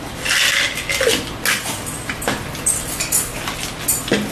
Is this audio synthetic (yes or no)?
no